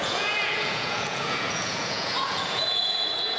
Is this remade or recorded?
remade